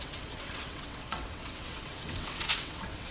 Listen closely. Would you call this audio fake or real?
fake